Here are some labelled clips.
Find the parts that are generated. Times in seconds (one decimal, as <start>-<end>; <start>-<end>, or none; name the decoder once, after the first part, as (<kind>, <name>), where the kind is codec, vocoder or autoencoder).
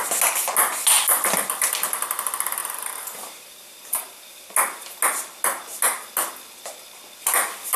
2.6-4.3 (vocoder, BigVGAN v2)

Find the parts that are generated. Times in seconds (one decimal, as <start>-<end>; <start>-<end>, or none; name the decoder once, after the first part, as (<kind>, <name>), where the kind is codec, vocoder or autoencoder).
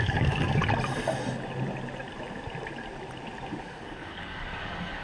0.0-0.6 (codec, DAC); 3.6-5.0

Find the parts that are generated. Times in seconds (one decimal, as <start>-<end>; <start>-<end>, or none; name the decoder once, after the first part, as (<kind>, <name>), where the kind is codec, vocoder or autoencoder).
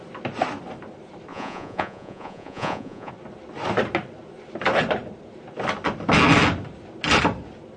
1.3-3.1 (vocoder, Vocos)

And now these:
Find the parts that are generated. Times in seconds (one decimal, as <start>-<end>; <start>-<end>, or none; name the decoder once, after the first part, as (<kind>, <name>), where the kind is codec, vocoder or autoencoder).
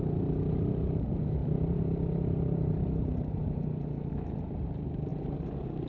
none